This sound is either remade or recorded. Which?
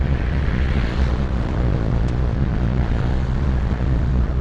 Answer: remade